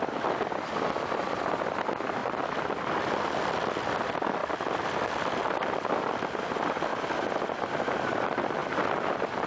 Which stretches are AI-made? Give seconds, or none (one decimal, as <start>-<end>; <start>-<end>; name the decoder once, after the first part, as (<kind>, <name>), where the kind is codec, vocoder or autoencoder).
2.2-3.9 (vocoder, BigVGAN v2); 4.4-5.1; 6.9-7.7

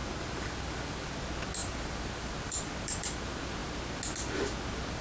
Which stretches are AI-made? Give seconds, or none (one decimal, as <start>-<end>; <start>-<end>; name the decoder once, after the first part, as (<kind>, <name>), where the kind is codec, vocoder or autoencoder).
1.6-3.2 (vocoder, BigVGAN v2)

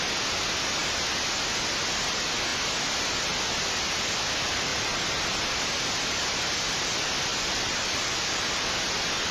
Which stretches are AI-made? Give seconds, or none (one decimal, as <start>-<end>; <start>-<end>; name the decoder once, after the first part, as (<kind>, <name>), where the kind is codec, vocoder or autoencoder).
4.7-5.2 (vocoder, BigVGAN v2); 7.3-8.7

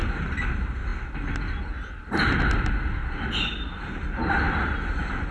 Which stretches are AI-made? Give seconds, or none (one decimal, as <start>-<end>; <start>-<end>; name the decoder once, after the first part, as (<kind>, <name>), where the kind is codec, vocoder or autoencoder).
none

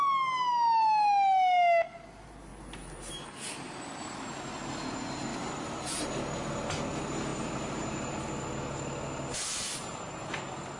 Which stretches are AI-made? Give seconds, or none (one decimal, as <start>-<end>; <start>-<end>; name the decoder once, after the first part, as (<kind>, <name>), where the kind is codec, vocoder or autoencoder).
5.3-6.1 (vocoder, BigVGAN v2); 7.3-8.3

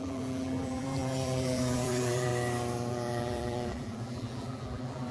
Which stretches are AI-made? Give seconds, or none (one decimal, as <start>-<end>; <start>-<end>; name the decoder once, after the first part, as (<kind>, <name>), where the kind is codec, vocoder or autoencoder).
0.0-2.3 (vocoder, BigVGAN v2); 2.9-5.1

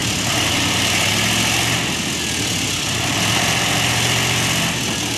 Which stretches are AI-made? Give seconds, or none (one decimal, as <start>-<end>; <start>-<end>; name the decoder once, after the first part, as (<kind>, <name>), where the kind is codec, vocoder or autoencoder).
0.0-1.1 (vocoder, BigVGAN v2); 2.2-5.2

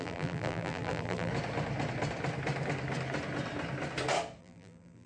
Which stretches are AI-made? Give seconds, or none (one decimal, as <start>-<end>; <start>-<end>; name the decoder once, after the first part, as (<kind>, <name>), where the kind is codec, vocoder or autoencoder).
0.0-1.3 (vocoder, BigVGAN v2); 4.4-5.1